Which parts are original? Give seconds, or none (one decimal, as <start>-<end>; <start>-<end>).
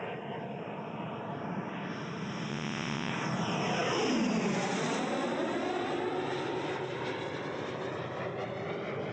0.0-2.5; 3.1-9.1